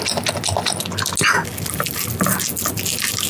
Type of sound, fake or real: real